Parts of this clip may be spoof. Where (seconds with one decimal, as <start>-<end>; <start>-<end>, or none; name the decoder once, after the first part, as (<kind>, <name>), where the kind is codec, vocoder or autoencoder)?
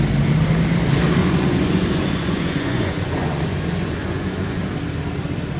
1.2-4.6 (vocoder, Vocos)